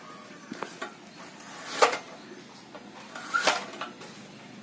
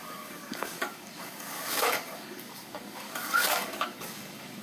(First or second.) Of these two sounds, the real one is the first